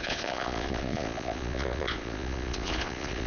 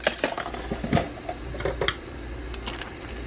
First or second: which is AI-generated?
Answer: first